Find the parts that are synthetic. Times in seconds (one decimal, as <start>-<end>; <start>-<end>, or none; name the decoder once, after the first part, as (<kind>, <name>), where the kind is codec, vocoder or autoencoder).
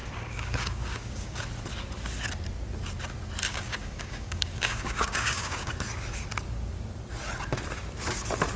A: 0.0-1.4 (codec, DAC); 3.5-5.7